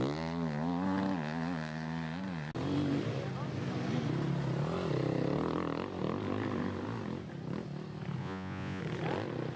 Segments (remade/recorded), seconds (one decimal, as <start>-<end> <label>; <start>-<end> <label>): 0.0-8.2 recorded; 8.2-8.8 remade; 8.8-9.6 recorded